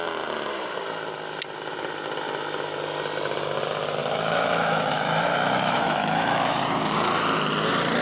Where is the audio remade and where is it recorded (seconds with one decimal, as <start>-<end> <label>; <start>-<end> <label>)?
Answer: 0.0-4.0 recorded; 4.0-6.6 remade; 6.6-8.0 recorded